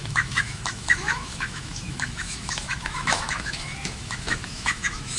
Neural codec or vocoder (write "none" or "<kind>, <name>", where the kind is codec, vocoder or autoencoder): autoencoder, DAC-VAE